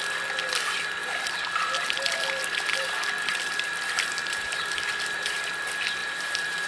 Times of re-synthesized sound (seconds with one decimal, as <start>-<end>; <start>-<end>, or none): 4.2-5.4; 6.0-6.7